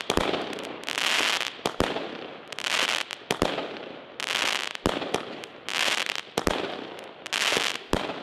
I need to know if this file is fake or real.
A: real